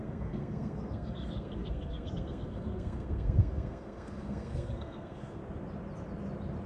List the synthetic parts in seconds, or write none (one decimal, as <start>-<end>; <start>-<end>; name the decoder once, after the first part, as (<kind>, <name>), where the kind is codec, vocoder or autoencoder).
0.0-5.4 (codec, SNAC)